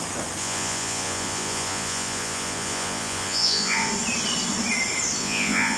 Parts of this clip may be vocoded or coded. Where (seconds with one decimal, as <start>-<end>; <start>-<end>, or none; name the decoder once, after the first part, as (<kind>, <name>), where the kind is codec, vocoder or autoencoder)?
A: 0.4-3.9 (vocoder, Vocos); 5.2-5.8